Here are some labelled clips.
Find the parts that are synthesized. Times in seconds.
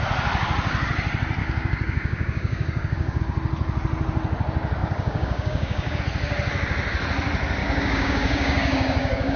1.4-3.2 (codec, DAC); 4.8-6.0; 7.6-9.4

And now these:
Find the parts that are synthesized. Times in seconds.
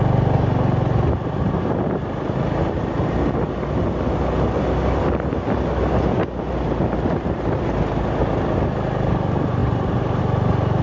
none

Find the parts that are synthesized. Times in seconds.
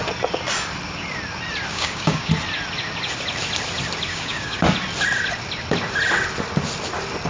1.7-2.3 (codec, DAC); 4.1-4.6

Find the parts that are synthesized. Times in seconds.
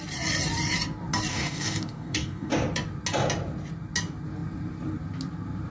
1.3-2.5 (codec, DAC)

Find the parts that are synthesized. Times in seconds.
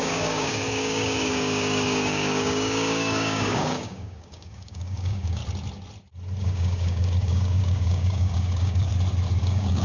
0.0-5.4 (codec, DAC); 6.4-8.9; 9.4-9.8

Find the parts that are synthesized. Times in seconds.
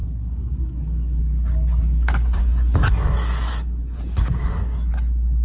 0.0-1.2 (codec, DAC); 1.7-4.9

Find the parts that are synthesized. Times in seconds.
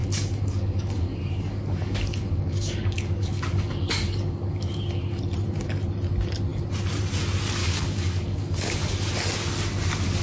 0.0-5.2 (codec, DAC); 7.6-9.1